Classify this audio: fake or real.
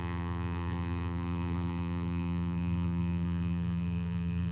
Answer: fake